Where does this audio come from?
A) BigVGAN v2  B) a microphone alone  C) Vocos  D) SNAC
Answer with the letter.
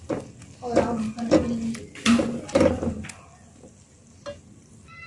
B